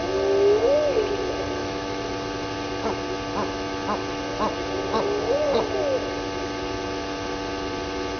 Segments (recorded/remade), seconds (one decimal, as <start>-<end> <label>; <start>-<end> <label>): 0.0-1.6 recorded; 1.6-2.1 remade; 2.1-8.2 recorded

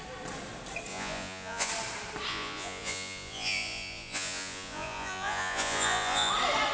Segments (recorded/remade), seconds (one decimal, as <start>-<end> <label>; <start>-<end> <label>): 0.0-0.9 recorded; 0.9-1.7 remade; 1.7-2.3 recorded; 2.3-6.3 remade; 6.3-6.7 recorded

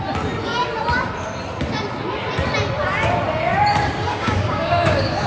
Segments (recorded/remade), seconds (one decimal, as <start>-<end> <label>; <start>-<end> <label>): 0.0-4.1 recorded; 4.1-5.3 remade

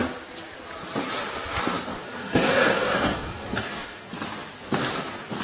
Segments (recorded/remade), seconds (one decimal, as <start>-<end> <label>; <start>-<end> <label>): 0.0-1.9 recorded; 1.9-4.1 remade; 4.1-5.4 recorded

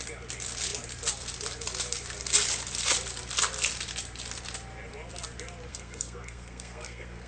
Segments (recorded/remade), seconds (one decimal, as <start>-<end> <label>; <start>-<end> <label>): 0.0-5.7 recorded; 5.7-7.3 remade

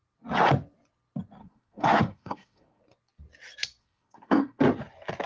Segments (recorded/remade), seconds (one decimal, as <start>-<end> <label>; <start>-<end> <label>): 0.0-1.4 recorded; 1.4-2.8 remade; 2.8-3.8 recorded; 3.8-4.6 remade; 4.6-5.3 recorded

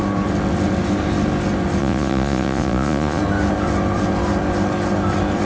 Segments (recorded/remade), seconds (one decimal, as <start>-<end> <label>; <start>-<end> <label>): 0.0-1.8 recorded; 1.8-3.2 remade; 3.2-5.4 recorded

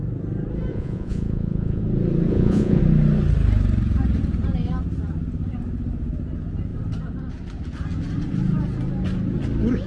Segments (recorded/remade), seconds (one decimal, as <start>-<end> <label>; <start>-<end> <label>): 0.0-0.7 recorded; 0.7-1.8 remade; 1.8-2.3 recorded; 2.3-2.8 remade; 2.8-9.9 recorded